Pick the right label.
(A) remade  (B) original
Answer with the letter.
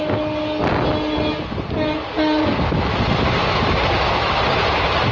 B